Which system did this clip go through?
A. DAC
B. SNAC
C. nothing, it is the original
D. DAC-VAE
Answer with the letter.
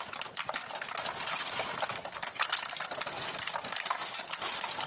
C